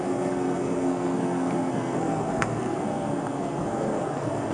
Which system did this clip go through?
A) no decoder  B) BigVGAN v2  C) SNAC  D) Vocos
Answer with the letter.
C